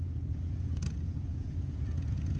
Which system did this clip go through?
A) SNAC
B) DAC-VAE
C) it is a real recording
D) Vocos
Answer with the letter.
D